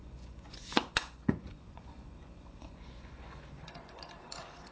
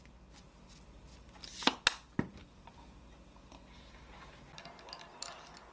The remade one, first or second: first